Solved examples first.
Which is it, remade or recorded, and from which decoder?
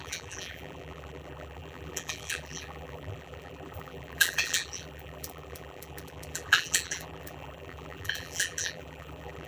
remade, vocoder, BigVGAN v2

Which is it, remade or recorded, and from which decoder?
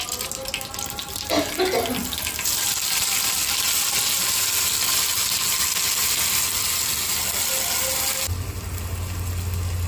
recorded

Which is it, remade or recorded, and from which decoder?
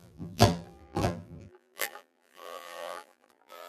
remade, vocoder, BigVGAN v2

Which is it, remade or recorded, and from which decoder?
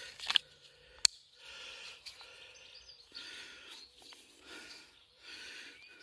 recorded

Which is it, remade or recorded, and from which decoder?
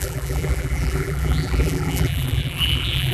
remade, vocoder, BigVGAN v2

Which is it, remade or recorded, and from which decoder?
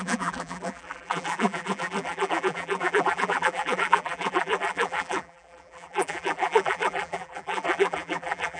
remade, vocoder, BigVGAN v2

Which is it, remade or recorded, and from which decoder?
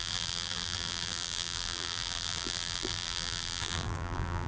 remade, vocoder, BigVGAN v2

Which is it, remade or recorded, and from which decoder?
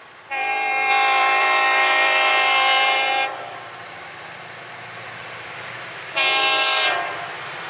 remade, vocoder, BigVGAN v2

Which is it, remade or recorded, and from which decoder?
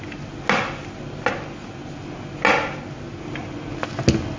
recorded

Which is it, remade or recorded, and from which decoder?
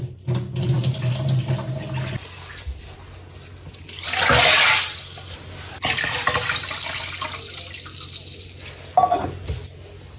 recorded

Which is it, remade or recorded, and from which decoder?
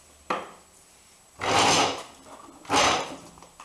recorded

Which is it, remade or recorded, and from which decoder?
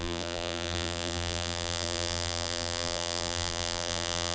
remade, vocoder, BigVGAN v2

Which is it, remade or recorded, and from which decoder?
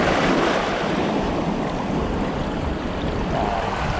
recorded